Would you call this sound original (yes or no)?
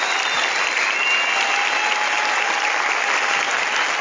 yes